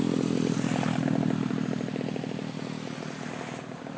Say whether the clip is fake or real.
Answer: real